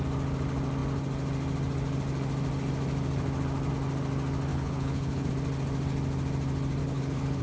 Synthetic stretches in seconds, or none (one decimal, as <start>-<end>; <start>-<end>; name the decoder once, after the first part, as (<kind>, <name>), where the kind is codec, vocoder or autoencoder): 4.5-5.3 (codec, HILCodec); 6.8-7.4